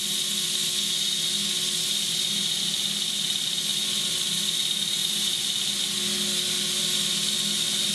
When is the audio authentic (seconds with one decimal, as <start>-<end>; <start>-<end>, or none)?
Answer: 0.0-7.9